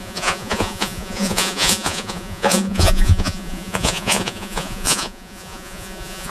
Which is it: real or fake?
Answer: fake